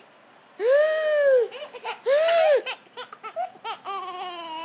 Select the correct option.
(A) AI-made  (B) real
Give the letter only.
B